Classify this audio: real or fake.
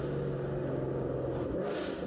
real